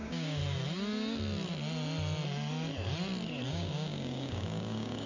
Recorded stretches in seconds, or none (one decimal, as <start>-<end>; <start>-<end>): 0.4-3.5